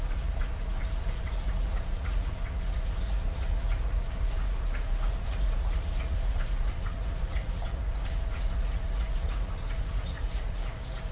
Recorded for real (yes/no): no